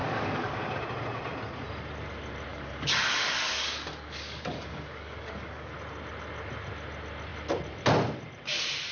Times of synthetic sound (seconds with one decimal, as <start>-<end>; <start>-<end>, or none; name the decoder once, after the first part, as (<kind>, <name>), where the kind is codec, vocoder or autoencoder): 0.0-0.7 (codec, DAC); 2.5-5.7